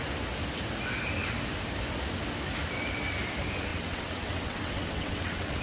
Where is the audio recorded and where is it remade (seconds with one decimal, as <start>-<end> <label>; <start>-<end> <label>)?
0.0-3.7 recorded; 3.7-5.6 remade